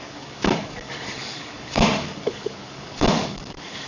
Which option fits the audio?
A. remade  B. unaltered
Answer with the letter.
A